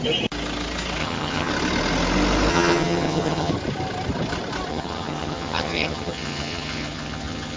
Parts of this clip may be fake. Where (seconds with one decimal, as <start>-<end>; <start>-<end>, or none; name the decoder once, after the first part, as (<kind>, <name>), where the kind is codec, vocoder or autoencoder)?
1.0-1.5 (vocoder, HiFi-GAN); 2.5-3.5; 4.7-7.6